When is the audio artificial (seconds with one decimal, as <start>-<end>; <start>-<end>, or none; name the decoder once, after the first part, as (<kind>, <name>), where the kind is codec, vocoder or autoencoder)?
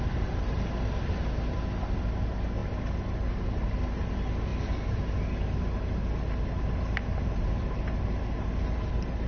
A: none